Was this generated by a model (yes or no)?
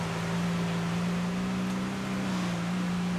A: no